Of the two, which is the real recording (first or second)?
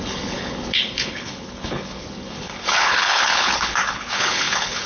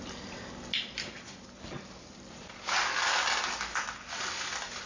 second